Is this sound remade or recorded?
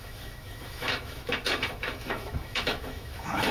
remade